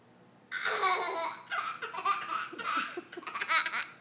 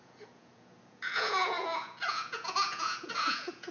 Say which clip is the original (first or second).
first